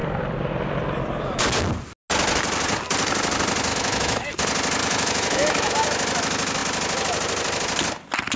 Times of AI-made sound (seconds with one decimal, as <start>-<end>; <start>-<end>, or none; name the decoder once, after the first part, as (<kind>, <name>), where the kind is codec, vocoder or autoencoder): 3.7-4.3 (autoencoder, DAC-VAE); 4.8-5.7